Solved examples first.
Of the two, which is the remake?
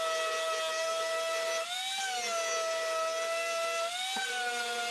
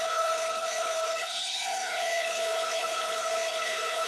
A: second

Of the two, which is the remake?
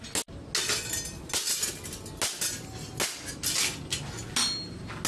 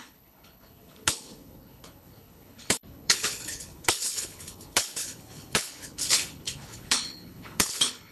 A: second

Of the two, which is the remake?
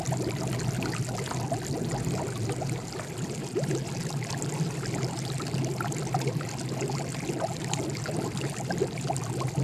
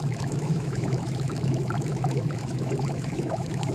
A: second